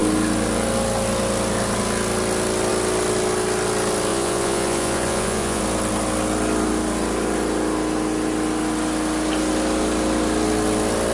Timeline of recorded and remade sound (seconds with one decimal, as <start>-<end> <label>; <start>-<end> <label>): 0.0-4.1 recorded; 4.1-5.6 remade; 5.6-11.1 recorded